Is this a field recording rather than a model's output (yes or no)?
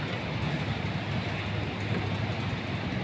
yes